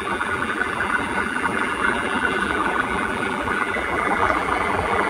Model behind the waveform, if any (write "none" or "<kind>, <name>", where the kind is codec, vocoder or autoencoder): vocoder, BigVGAN v2